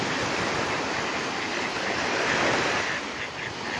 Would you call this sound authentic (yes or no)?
yes